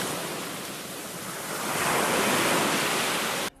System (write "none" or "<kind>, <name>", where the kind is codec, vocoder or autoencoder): none